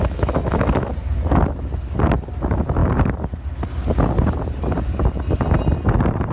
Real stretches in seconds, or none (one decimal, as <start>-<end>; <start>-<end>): 0.9-6.3

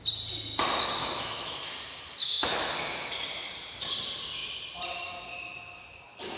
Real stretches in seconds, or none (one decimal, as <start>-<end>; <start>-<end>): 0.0-1.0; 1.7-2.2; 2.7-6.4

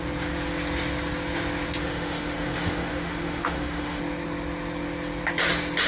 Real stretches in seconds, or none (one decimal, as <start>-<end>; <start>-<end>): 0.0-1.8; 4.0-5.9

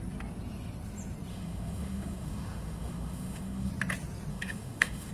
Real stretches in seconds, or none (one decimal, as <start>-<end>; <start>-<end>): 0.0-1.3; 3.7-4.3